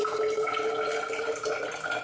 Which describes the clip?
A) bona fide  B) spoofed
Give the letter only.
A